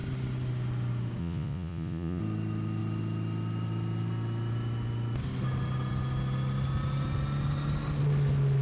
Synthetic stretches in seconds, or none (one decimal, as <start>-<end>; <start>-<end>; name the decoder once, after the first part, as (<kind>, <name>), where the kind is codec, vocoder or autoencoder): 1.2-2.2 (vocoder, Vocos)